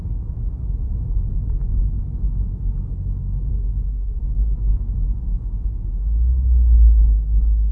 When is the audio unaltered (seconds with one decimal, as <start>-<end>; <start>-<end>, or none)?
0.0-3.5; 4.2-7.7

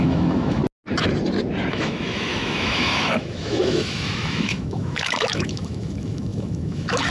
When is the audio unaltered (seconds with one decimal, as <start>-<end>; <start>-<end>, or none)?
0.6-1.7

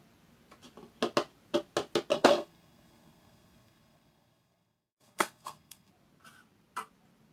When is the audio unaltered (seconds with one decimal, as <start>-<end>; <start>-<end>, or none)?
0.0-2.1; 5.9-7.3

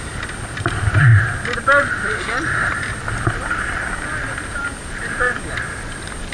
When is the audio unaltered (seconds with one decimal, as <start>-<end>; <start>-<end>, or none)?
0.0-6.3

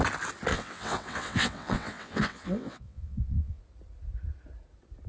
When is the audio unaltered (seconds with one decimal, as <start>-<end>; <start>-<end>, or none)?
0.0-0.5; 3.6-5.1

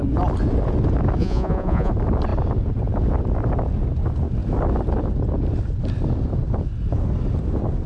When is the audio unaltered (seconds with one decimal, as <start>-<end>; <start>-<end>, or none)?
0.0-1.2; 1.9-7.9

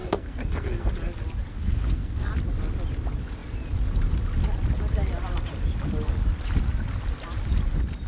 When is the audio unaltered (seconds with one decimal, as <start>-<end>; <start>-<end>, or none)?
0.9-1.5; 2.3-8.1